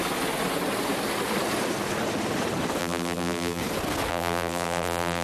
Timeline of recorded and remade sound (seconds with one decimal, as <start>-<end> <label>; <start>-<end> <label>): 0.0-2.8 recorded; 2.8-3.6 remade; 3.6-4.1 recorded; 4.1-5.2 remade